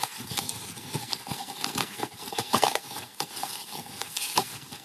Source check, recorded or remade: remade